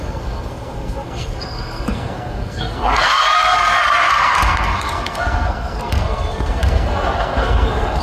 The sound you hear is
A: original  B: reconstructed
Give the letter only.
B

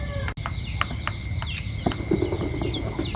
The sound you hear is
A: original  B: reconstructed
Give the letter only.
A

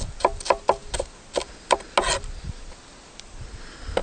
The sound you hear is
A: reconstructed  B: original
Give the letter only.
B